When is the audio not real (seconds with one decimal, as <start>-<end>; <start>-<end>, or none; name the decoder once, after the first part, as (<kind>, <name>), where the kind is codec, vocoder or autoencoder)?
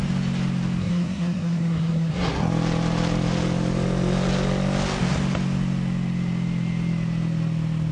0.8-2.5 (codec, SNAC)